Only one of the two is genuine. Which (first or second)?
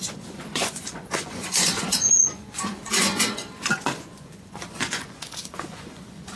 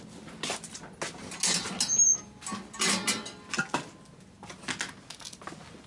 second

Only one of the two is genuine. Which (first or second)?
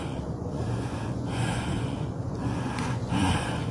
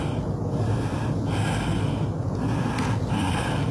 second